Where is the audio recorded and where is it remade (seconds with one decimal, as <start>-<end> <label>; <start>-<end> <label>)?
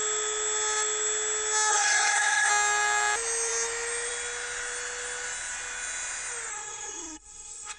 0.0-1.7 recorded; 1.7-2.5 remade; 2.5-6.5 recorded; 6.5-7.8 remade